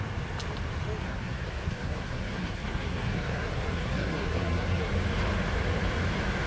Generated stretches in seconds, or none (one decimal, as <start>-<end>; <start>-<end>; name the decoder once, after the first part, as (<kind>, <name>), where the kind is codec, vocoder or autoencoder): 1.0-4.9 (codec, SNAC)

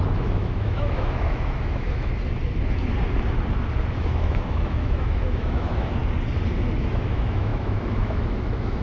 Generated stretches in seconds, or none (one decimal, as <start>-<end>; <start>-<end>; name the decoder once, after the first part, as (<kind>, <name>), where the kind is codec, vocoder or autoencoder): 0.0-2.1 (autoencoder, DAC-VAE); 4.0-6.0; 6.8-8.8